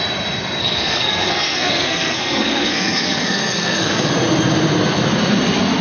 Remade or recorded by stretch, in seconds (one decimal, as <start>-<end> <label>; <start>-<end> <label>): 0.0-0.6 recorded; 0.6-4.1 remade; 4.1-5.8 recorded